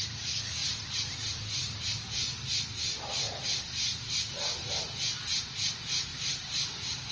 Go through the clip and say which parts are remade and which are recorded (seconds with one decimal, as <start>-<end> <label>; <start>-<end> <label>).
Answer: 0.0-6.1 recorded; 6.1-7.1 remade